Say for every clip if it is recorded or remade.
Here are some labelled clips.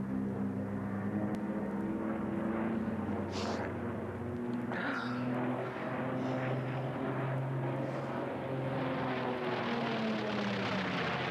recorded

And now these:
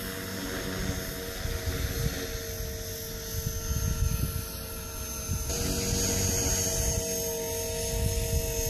recorded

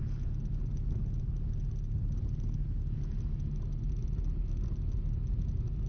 recorded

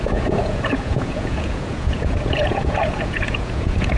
remade